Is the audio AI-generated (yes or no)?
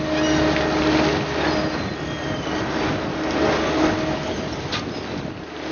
no